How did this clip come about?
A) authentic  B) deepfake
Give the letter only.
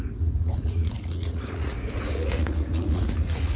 B